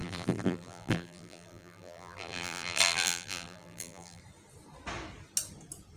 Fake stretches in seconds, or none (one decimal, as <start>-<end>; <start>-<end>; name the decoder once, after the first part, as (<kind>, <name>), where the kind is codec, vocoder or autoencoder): 0.0-4.2 (vocoder, BigVGAN v2)